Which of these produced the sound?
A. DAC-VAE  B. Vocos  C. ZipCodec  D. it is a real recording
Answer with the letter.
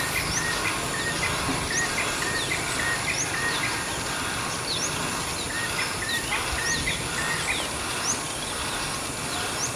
D